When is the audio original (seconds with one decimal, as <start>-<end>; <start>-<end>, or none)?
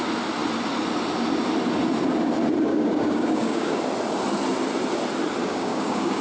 0.0-2.7; 3.8-5.4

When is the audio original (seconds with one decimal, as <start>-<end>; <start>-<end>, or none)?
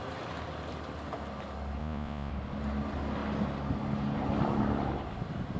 0.0-1.8; 2.3-5.6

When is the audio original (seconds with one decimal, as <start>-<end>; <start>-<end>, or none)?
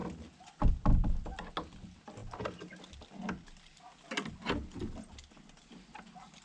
0.0-6.4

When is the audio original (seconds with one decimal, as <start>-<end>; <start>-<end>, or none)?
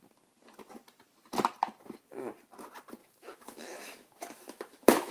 0.0-3.0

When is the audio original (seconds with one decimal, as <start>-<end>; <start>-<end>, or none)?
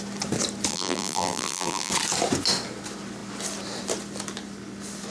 0.0-0.7; 1.9-5.1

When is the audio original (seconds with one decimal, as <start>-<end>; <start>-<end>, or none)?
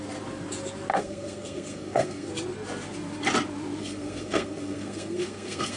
0.0-0.9; 2.3-3.8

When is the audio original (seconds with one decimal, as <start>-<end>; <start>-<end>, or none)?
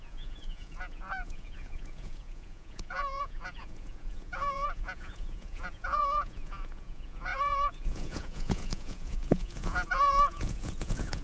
none